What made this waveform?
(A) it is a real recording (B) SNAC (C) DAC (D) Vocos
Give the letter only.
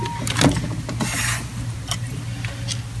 A